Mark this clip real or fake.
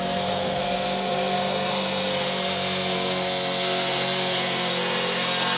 fake